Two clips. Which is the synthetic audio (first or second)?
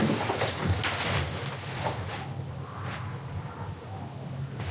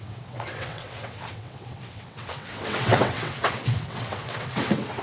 second